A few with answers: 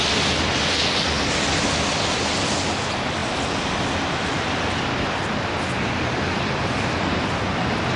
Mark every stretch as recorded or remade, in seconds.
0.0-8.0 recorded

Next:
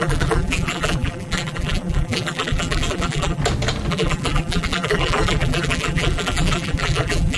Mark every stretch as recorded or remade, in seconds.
0.0-3.4 remade; 3.4-3.9 recorded; 3.9-7.4 remade

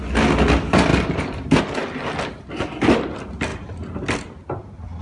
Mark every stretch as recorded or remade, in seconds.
0.0-0.9 recorded; 0.9-1.6 remade; 1.6-5.0 recorded

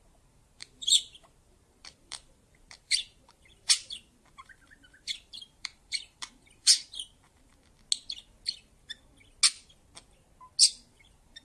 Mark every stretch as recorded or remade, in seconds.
0.0-7.5 remade; 7.5-10.7 recorded; 10.7-11.4 remade

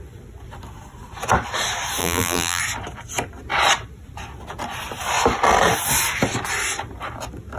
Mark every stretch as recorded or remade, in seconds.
0.0-2.0 recorded; 2.0-2.6 remade; 2.6-7.6 recorded

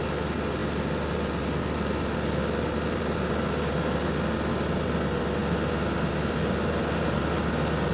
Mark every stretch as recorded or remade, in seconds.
0.0-7.9 recorded

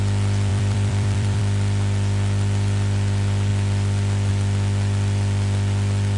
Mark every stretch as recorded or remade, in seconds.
0.0-0.5 recorded; 0.5-1.4 remade; 1.4-6.2 recorded

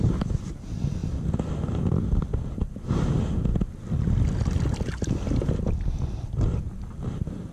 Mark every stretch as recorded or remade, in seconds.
0.0-7.5 recorded